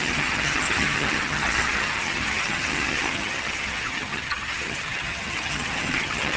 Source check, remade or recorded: remade